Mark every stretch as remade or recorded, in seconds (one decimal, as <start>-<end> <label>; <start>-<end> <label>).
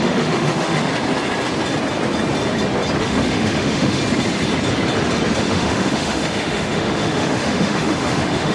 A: 0.0-0.9 remade; 0.9-3.0 recorded; 3.0-4.0 remade; 4.0-5.4 recorded; 5.4-8.5 remade